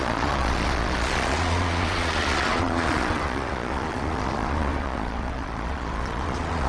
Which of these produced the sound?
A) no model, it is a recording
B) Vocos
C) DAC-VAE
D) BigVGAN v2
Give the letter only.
B